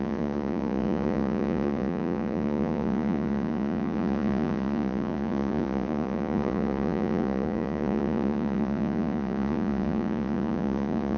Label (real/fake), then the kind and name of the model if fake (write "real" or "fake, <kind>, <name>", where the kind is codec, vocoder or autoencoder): fake, vocoder, Vocos